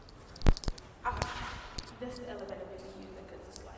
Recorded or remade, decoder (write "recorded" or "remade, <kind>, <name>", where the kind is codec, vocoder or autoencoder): recorded